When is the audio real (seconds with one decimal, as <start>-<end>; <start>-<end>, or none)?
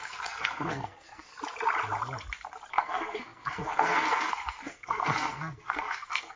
1.3-2.7